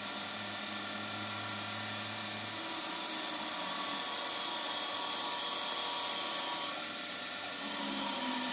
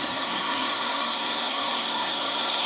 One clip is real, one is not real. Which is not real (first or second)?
second